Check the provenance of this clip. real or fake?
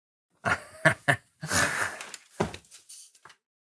real